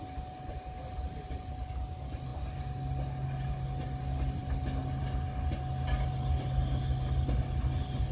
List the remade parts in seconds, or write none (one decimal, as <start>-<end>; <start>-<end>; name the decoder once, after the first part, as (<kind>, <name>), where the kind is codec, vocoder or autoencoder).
none